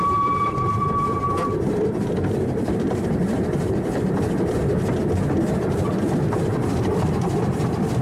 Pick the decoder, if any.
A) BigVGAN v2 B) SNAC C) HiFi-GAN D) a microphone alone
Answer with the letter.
A